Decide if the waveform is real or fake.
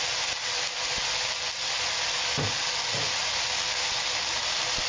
real